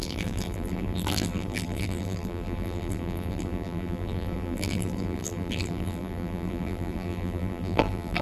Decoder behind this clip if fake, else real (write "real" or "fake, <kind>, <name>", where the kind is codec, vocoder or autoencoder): fake, vocoder, BigVGAN v2